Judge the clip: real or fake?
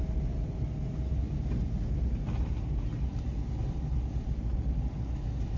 real